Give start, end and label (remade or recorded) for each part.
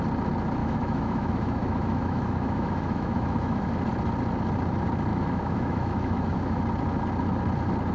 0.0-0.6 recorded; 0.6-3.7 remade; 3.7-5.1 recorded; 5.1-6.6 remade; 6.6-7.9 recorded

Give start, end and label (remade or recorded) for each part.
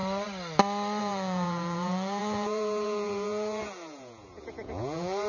0.0-1.0 recorded; 1.0-5.3 remade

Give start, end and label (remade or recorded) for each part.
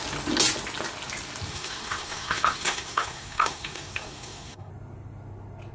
0.0-1.5 recorded; 1.5-4.7 remade; 4.7-5.7 recorded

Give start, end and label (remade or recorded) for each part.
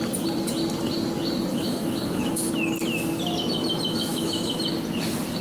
0.0-1.5 recorded; 1.5-2.5 remade; 2.5-4.1 recorded; 4.1-4.6 remade; 4.6-5.4 recorded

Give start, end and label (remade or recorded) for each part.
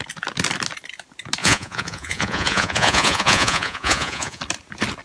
0.0-1.4 recorded; 1.4-4.4 remade; 4.4-5.0 recorded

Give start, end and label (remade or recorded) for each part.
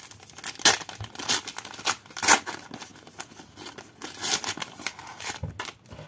0.0-6.1 recorded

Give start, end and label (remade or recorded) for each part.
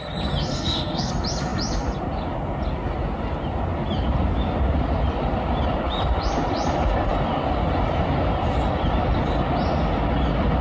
0.0-0.5 recorded; 0.5-1.1 remade; 1.1-10.6 recorded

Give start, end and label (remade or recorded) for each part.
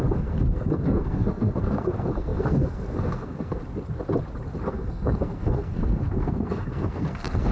0.0-3.6 remade; 3.6-4.7 recorded; 4.7-7.5 remade